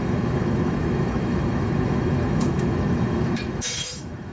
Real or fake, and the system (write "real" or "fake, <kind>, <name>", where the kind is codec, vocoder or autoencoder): fake, autoencoder, DAC-VAE